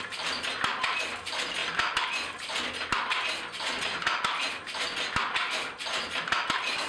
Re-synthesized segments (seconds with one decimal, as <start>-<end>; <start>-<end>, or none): none